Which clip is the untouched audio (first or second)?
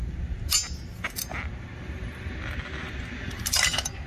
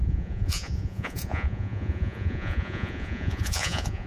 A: first